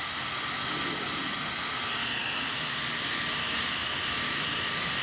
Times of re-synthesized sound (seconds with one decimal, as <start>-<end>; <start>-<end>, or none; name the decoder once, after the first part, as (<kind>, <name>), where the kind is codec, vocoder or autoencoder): none